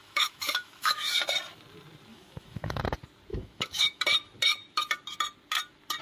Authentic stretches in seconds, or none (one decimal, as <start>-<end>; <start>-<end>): 1.2-2.1; 2.8-3.3; 4.0-6.0